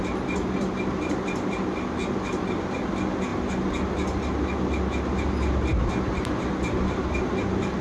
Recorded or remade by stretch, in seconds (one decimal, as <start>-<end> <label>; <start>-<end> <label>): 0.0-7.8 recorded